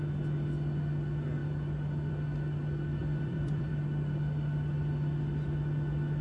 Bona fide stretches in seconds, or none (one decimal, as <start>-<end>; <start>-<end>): 0.0-3.0; 3.7-6.2